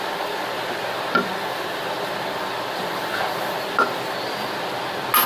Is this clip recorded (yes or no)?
yes